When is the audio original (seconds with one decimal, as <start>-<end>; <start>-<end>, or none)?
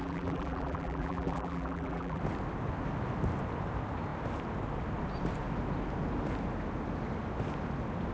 2.2-8.1